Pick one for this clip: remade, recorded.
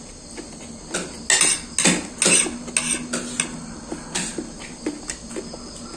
recorded